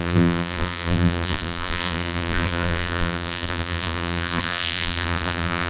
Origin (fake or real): fake